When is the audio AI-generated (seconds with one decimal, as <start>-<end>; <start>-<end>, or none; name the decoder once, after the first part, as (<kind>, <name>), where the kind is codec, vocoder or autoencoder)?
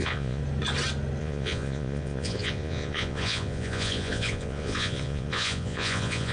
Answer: 0.0-0.4 (vocoder, Vocos); 1.2-6.3